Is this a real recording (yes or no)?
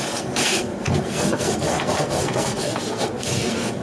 no